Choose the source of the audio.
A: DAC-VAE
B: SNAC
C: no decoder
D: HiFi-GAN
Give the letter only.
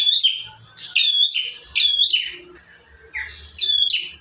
C